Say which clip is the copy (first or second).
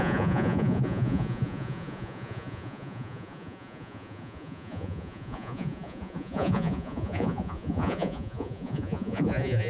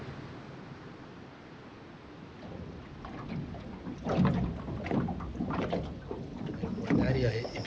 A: first